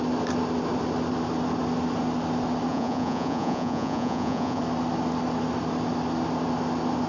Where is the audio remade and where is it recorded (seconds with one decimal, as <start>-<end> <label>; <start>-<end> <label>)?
0.0-2.7 recorded; 2.7-4.6 remade; 4.6-7.1 recorded